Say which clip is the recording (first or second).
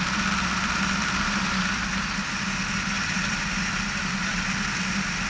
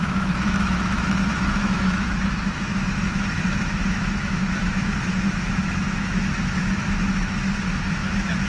first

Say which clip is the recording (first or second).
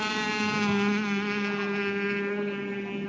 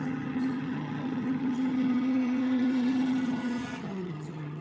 first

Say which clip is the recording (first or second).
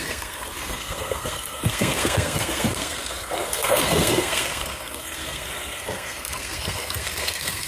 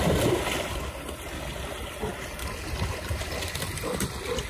second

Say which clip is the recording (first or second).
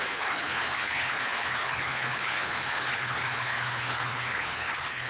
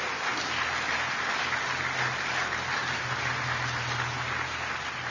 second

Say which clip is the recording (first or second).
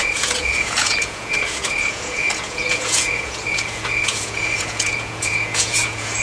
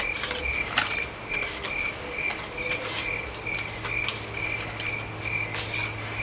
second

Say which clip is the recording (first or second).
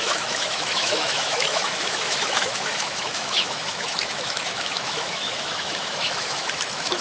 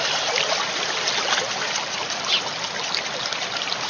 second